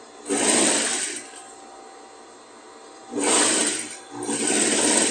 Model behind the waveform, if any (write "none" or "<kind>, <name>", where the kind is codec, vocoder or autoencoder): none